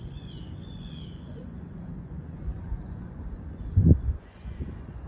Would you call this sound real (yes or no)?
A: no